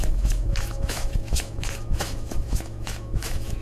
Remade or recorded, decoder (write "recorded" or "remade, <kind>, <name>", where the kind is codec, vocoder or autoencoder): remade, autoencoder, DAC-VAE